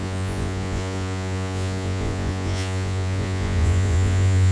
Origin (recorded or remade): remade